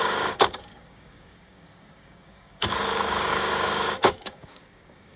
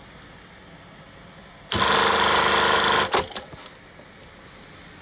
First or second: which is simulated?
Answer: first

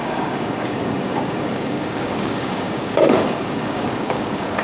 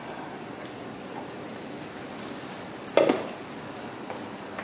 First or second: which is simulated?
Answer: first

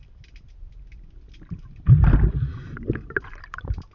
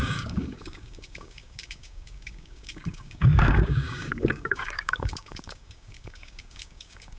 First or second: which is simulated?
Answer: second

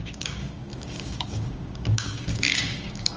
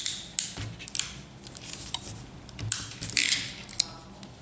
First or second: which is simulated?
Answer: first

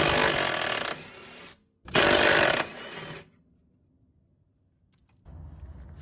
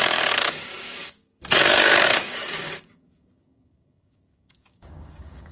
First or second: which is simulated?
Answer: second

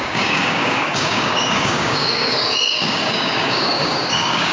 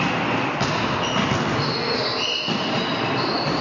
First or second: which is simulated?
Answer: first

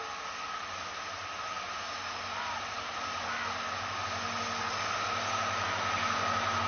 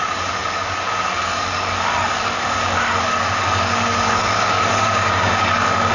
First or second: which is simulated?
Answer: second